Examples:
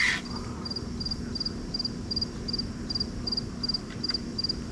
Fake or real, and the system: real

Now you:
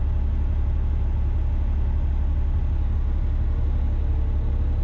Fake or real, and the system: real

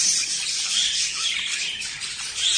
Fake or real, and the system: real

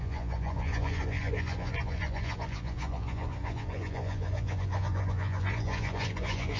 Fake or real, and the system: fake, vocoder, Vocos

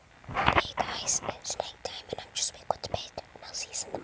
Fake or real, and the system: real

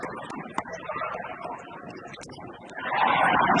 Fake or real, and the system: real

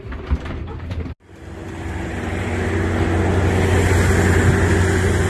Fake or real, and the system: real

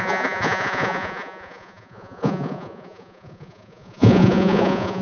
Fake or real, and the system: fake, vocoder, Vocos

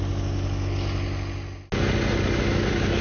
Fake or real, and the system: real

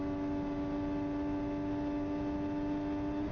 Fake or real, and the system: real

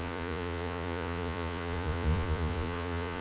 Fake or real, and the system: fake, vocoder, Vocos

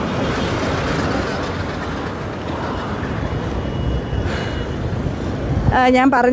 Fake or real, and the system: real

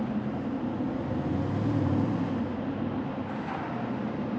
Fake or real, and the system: real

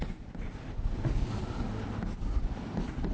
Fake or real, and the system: real